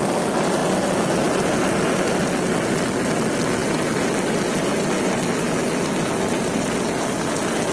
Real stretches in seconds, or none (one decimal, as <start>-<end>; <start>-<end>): 0.0-7.7